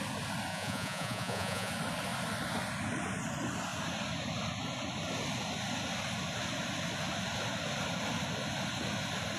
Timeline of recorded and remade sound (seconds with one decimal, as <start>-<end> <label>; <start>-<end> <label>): 0.0-0.5 recorded; 0.5-1.7 remade; 1.7-9.4 recorded